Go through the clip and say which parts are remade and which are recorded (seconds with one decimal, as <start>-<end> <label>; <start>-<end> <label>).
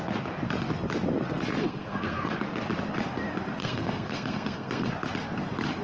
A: 0.0-1.6 recorded; 1.6-2.3 remade; 2.3-3.6 recorded; 3.6-4.9 remade; 4.9-5.8 recorded